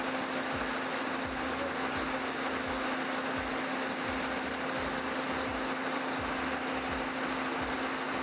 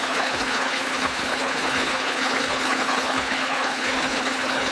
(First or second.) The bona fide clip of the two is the first